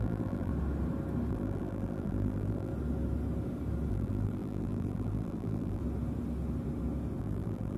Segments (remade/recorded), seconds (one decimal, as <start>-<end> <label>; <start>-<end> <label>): 0.0-0.5 remade; 0.5-1.3 recorded; 1.3-2.7 remade; 2.7-3.9 recorded; 3.9-5.8 remade; 5.8-7.2 recorded; 7.2-7.8 remade

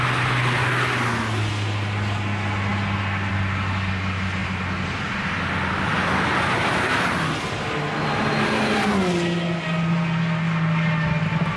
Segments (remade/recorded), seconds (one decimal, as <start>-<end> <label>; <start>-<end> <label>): 0.0-11.6 recorded

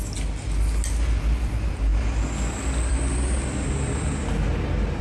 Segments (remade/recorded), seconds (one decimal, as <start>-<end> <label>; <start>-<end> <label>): 0.0-5.0 recorded

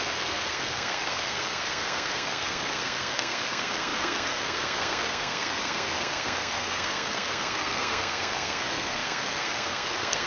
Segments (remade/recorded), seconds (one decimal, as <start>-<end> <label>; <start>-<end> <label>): 0.0-10.3 remade

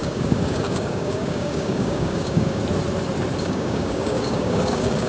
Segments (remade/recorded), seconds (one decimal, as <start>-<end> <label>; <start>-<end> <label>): 0.0-2.6 remade; 2.6-3.4 recorded; 3.4-5.1 remade